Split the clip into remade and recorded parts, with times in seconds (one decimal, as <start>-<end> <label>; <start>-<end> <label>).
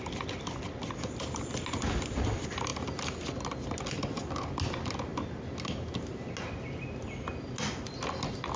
0.0-8.6 recorded